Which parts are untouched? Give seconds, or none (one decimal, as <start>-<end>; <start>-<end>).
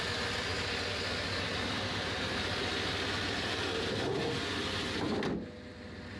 0.0-6.2